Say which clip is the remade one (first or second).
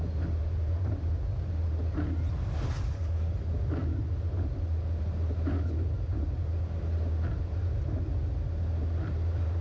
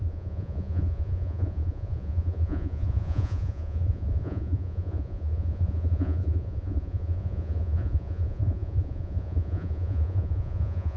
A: second